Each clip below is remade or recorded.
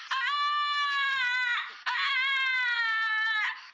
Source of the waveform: recorded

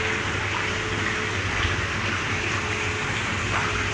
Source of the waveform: recorded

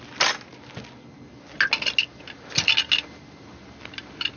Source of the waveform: recorded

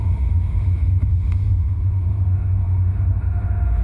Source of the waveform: remade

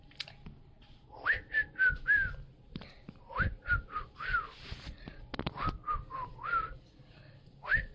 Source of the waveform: recorded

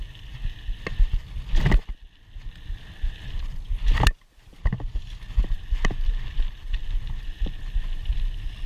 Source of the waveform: recorded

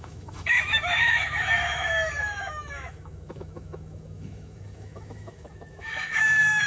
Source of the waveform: remade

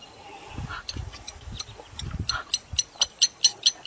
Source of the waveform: recorded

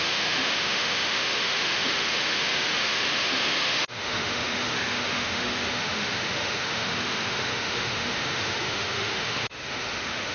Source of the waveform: remade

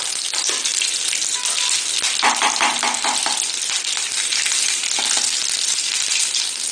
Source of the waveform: recorded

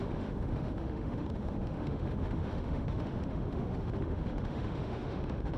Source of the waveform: remade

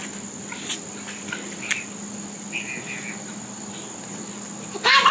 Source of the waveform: recorded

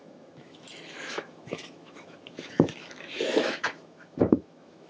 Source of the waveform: remade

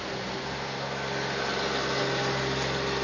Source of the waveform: recorded